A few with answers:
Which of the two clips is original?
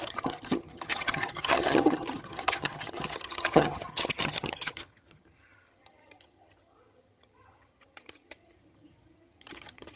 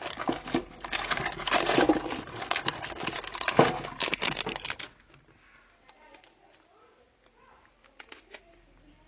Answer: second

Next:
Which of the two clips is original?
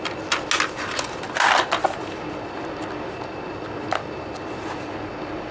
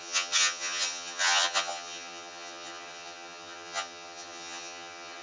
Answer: first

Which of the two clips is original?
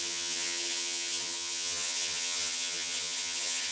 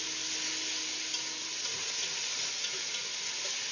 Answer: second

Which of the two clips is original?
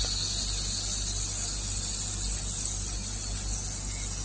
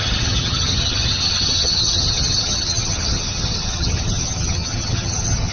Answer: first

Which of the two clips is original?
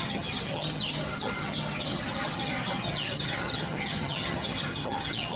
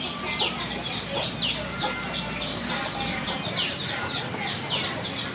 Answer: second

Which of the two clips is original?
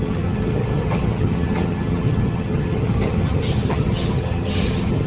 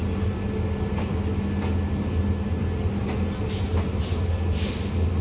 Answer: second